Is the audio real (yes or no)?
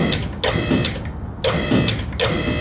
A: yes